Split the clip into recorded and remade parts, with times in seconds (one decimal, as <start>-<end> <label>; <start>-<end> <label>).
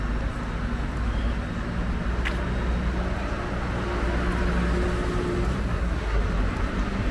0.0-5.6 recorded; 5.6-6.2 remade; 6.2-7.1 recorded